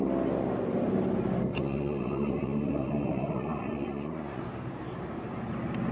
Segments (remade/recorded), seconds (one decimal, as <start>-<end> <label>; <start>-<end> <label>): 0.0-1.5 recorded; 1.5-4.4 remade; 4.4-5.9 recorded